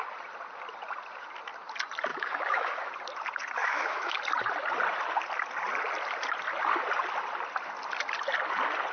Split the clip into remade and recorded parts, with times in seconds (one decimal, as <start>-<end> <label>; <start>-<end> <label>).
0.0-2.1 recorded; 2.1-2.9 remade; 2.9-3.6 recorded; 3.6-4.2 remade; 4.2-8.9 recorded